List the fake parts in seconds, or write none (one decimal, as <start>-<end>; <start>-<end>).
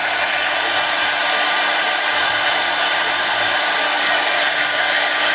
3.8-5.3